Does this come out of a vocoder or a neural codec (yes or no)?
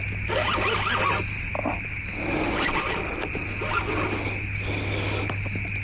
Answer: no